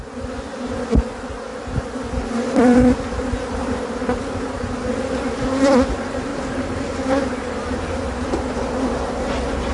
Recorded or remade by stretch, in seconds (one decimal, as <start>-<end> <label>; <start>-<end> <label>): 0.0-1.5 recorded; 1.5-4.2 remade; 4.2-9.7 recorded